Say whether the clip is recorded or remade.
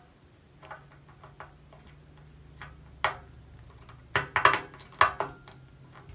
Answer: recorded